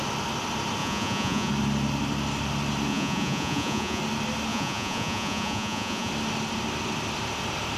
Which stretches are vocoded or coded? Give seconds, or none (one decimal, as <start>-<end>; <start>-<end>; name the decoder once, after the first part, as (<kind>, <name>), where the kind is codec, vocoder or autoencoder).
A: 0.8-1.5 (vocoder, Vocos); 2.9-4.0; 4.5-6.1